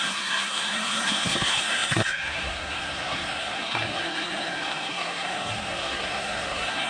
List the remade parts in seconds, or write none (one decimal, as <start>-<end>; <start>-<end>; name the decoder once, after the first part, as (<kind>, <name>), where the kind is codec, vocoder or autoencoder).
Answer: 0.0-6.9 (codec, SNAC)